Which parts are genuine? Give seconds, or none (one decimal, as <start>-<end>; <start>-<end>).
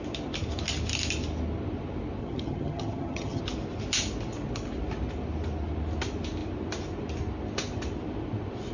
0.0-2.2; 3.4-8.7